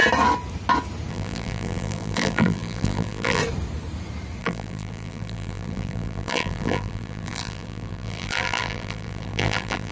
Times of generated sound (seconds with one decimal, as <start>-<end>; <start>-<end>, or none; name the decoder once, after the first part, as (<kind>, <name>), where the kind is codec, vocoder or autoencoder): 1.1-3.4 (vocoder, BigVGAN v2); 4.4-9.9